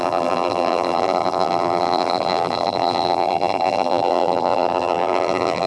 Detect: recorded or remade remade